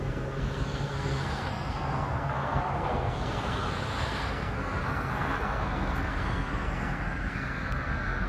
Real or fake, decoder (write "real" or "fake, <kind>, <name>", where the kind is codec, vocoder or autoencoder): fake, codec, SNAC